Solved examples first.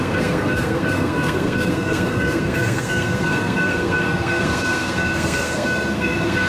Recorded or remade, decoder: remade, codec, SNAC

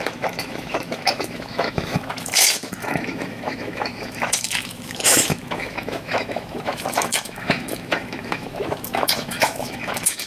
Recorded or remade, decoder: remade, autoencoder, DAC-VAE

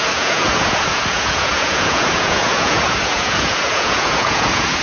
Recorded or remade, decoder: remade, vocoder, Vocos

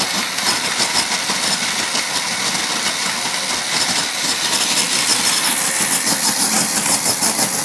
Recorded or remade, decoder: recorded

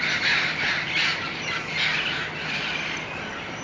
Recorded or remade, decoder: recorded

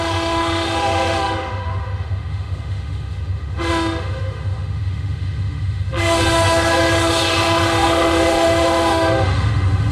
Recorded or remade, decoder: remade, autoencoder, DAC-VAE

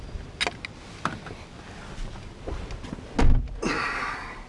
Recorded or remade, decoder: recorded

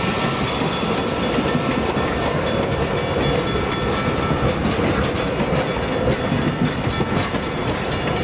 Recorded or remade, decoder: recorded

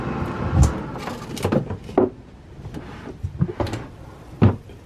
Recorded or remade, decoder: recorded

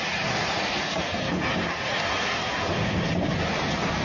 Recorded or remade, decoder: recorded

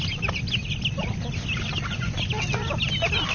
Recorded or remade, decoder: recorded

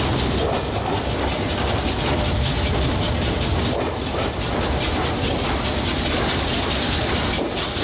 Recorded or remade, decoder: recorded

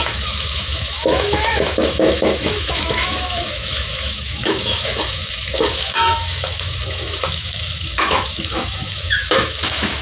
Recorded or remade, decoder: remade, autoencoder, DAC-VAE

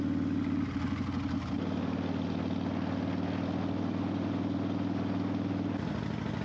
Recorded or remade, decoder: recorded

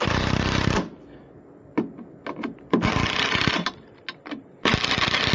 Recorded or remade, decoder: recorded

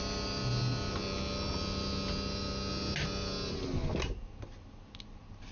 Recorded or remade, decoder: recorded